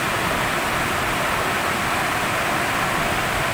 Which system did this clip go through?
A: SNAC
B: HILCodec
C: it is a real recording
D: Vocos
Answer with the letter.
C